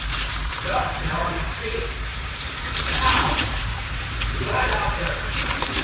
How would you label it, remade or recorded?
remade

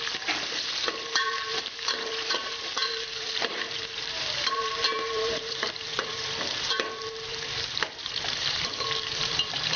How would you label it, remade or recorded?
remade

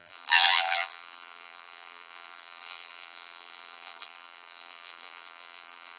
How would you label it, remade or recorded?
remade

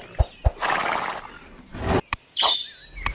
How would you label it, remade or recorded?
recorded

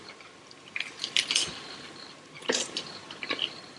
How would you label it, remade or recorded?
remade